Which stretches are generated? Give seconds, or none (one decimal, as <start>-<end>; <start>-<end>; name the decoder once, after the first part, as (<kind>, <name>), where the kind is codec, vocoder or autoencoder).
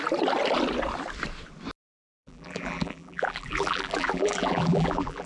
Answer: 2.1-5.3 (vocoder, BigVGAN v2)